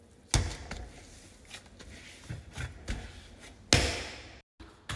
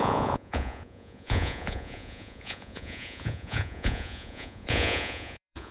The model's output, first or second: second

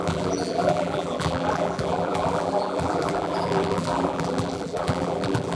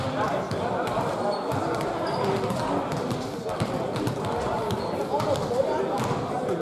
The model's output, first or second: first